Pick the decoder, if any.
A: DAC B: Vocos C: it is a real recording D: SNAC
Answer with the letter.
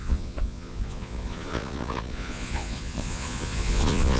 B